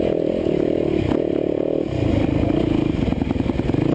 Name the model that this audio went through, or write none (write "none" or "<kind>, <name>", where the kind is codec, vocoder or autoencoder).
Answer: none